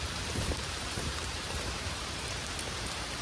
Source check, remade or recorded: remade